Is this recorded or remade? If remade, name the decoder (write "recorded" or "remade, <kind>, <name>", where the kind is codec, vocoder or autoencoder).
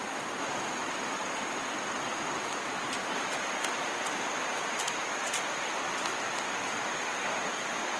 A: recorded